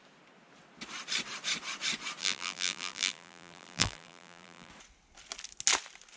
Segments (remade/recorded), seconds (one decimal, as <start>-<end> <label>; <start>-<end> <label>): 0.0-2.2 recorded; 2.2-4.7 remade; 4.7-6.2 recorded